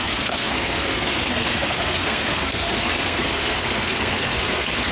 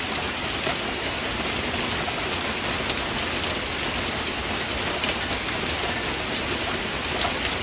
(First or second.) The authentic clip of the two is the second